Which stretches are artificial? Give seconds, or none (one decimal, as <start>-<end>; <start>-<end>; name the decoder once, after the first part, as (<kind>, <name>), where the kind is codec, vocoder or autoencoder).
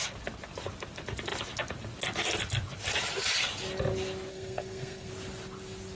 4.3-5.1 (codec, SNAC)